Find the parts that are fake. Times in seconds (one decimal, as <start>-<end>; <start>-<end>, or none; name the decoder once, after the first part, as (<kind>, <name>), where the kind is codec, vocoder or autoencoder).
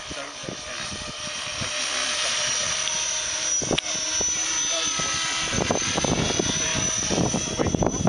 2.0-3.6 (vocoder, BigVGAN v2)